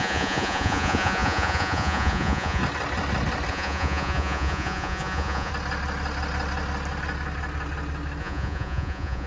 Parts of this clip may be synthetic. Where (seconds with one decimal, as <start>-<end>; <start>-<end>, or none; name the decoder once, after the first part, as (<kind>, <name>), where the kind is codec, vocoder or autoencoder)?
0.0-2.6 (vocoder, Vocos); 3.5-5.5; 8.2-9.3

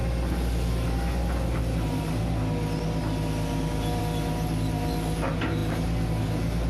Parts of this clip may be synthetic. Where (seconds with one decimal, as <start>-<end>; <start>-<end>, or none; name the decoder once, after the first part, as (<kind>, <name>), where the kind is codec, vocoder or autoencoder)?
none

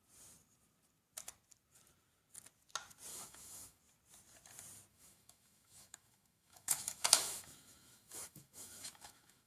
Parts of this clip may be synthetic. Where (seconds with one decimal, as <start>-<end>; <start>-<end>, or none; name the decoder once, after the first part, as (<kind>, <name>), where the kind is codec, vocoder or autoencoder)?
3.1-3.8 (autoencoder, DAC-VAE); 4.9-9.5

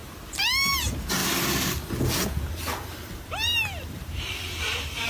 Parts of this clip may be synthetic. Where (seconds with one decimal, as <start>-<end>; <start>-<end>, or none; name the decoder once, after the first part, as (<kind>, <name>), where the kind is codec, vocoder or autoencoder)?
0.0-0.7 (vocoder, BigVGAN v2); 2.8-5.1

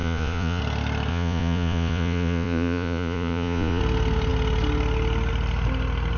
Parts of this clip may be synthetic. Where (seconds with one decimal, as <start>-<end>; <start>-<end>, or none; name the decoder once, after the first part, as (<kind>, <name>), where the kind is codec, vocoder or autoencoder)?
0.0-0.6 (vocoder, Vocos); 1.1-3.8

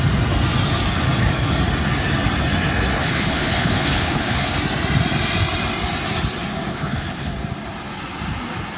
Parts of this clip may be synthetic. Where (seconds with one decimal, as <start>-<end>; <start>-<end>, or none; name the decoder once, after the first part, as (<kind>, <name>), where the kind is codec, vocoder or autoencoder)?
3.0-4.6 (codec, HILCodec); 6.7-7.3

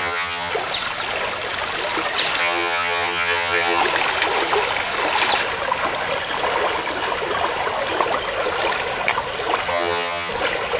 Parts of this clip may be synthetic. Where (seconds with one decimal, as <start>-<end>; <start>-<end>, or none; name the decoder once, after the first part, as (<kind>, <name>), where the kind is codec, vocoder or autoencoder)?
0.0-0.5 (vocoder, HiFi-GAN); 2.4-3.8; 9.7-10.3

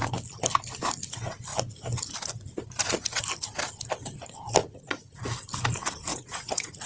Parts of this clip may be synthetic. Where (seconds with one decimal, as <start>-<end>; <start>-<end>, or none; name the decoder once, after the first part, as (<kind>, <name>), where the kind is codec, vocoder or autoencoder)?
4.6-5.2 (vocoder, Vocos); 6.1-6.9